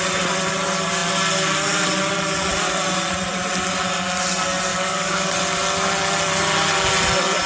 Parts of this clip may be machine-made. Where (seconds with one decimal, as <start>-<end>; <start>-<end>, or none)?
4.7-5.3